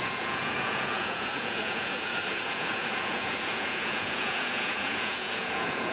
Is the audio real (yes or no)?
no